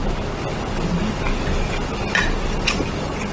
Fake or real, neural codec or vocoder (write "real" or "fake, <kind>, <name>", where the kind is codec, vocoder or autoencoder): real